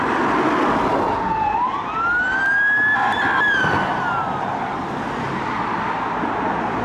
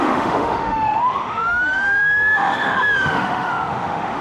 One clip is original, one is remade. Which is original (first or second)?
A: first